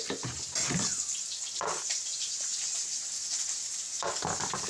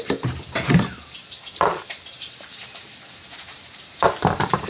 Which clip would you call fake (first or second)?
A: second